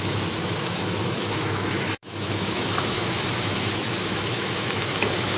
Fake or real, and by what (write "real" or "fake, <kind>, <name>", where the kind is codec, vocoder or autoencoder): fake, autoencoder, DAC-VAE